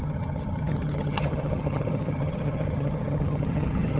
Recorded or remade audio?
remade